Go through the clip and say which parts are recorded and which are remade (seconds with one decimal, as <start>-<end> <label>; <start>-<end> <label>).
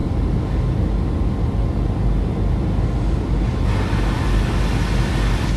0.0-5.6 recorded